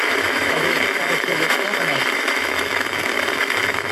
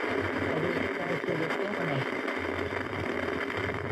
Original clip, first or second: second